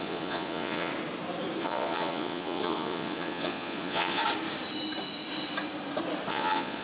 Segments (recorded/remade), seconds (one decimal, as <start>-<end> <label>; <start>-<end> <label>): 0.0-0.9 remade; 0.9-1.6 recorded; 1.6-4.2 remade; 4.2-6.3 recorded; 6.3-6.8 remade